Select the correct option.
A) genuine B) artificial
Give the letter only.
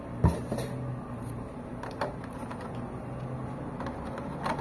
A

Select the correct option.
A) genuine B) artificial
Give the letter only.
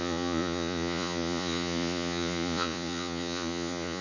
B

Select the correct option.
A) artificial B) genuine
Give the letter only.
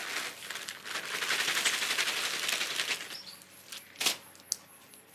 B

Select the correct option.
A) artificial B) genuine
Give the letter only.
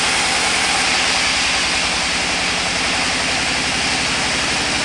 B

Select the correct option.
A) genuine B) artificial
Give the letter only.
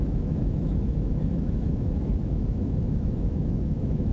B